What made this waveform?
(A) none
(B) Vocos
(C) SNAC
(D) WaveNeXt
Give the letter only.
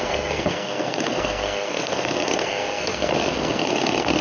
C